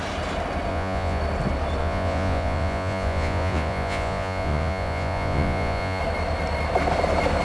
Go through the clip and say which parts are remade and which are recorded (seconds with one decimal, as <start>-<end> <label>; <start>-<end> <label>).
0.0-0.7 recorded; 0.7-1.2 remade; 1.2-1.8 recorded; 1.8-6.0 remade; 6.0-7.4 recorded